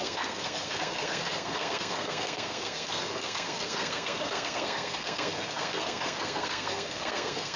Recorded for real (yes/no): no